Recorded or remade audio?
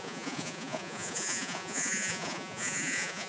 remade